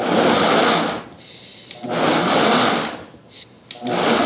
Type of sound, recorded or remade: recorded